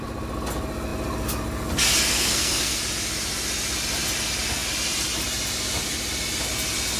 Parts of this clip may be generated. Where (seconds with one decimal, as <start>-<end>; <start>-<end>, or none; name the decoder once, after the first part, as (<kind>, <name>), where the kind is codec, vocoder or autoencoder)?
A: 2.1-2.8 (codec, SNAC)

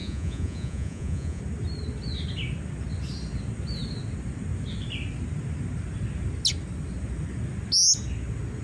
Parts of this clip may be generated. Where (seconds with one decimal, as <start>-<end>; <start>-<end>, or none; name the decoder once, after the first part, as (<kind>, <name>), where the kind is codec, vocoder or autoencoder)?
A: 0.0-1.4 (vocoder, Vocos)

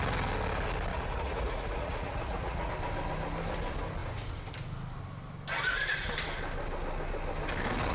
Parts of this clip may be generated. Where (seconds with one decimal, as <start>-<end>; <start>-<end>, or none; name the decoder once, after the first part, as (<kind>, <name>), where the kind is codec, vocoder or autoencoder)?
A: 0.9-2.7 (vocoder, Vocos)

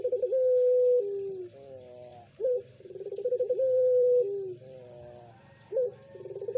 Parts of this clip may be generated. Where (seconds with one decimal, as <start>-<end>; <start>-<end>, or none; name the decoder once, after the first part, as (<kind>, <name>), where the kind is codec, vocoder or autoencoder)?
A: 2.1-4.5 (vocoder, BigVGAN v2)

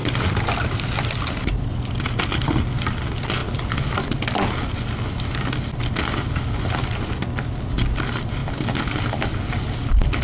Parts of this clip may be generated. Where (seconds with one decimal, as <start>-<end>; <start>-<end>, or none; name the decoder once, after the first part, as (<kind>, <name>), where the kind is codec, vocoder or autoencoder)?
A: none

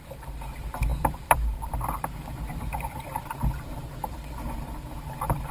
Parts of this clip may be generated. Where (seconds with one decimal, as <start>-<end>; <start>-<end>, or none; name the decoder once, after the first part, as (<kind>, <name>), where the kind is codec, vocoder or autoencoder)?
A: 0.9-4.2 (vocoder, BigVGAN v2)

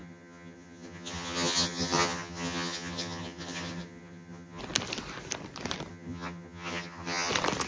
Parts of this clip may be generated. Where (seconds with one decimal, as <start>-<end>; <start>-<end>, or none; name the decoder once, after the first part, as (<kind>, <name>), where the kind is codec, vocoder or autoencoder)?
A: 0.0-4.6 (vocoder, HiFi-GAN); 5.9-7.3

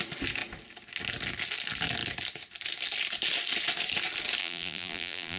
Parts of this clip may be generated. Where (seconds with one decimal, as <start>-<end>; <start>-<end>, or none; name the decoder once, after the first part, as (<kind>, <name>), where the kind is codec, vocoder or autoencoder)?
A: 4.4-5.4 (vocoder, BigVGAN v2)